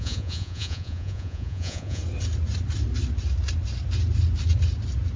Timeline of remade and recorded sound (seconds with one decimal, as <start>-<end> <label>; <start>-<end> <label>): 0.0-2.0 remade; 2.0-5.2 recorded